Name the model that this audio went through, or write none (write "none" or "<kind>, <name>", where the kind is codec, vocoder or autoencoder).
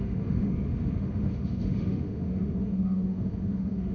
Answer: autoencoder, DAC-VAE